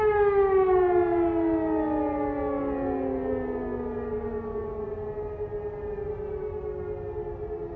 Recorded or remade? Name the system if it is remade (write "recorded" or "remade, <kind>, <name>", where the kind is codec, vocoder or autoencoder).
recorded